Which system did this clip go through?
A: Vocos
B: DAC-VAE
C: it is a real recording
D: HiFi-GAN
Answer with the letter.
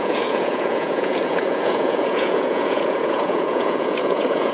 A